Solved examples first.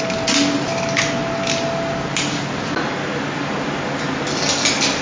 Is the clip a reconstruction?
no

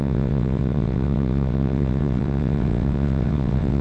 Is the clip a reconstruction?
yes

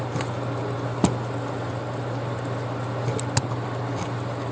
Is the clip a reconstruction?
no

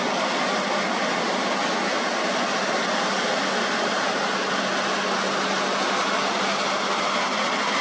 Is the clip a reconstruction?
no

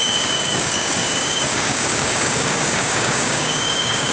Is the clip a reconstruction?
yes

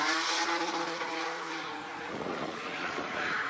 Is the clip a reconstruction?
yes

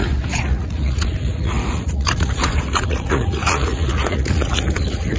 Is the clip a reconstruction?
yes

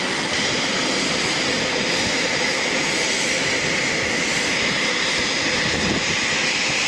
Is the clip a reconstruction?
no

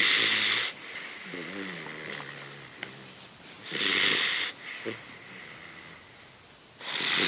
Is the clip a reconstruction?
no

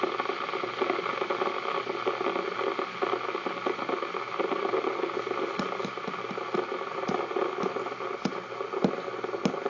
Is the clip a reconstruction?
no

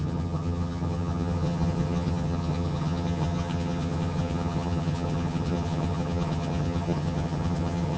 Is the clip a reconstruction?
yes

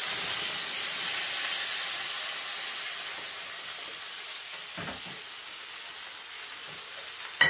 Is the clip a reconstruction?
no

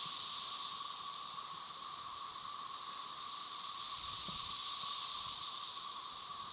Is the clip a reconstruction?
yes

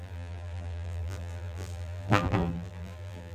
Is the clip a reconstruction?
yes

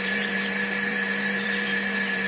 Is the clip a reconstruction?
yes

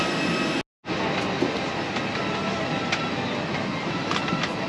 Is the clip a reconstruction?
no